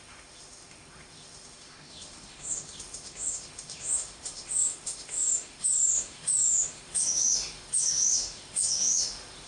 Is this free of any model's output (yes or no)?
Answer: no